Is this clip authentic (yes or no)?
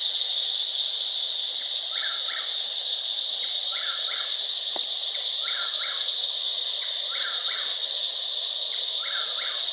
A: yes